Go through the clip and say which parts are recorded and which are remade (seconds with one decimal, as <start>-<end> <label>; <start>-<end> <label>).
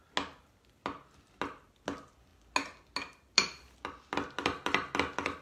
0.0-5.4 recorded